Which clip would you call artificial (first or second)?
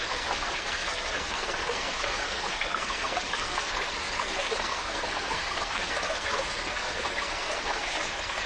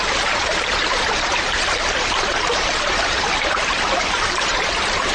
first